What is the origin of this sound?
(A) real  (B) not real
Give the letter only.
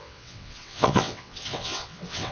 B